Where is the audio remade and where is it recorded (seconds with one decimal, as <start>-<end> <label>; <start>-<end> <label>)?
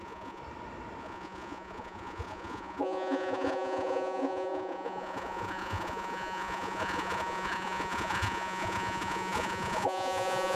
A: 0.0-0.4 remade; 0.4-1.0 recorded; 1.0-10.6 remade